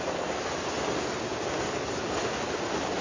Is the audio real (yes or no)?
yes